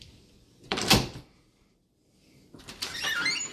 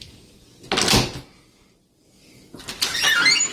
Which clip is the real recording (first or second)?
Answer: second